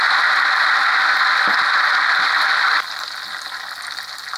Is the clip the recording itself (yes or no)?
yes